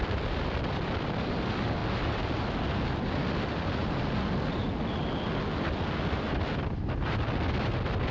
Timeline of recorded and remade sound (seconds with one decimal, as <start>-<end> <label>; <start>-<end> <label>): 0.0-8.1 recorded